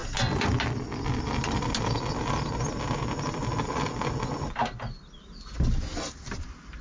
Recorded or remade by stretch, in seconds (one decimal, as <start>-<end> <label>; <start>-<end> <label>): 0.0-6.8 recorded

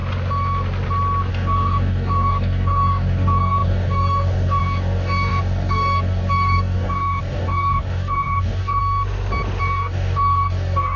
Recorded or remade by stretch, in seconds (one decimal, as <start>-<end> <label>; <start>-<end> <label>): 0.0-1.3 recorded; 1.3-8.8 remade; 8.8-9.6 recorded; 9.6-11.0 remade

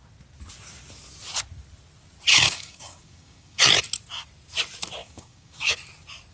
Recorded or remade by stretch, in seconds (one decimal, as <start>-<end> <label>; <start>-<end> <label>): 0.0-2.3 recorded; 2.3-3.6 remade; 3.6-5.0 recorded; 5.0-5.7 remade; 5.7-6.3 recorded